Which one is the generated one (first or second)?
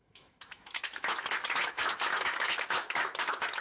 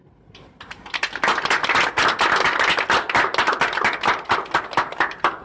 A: first